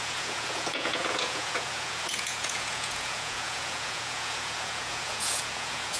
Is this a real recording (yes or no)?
no